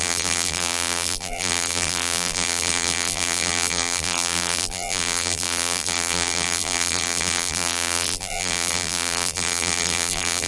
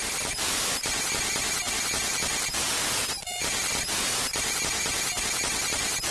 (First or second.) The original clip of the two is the second